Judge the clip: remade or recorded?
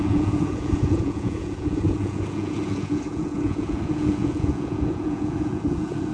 remade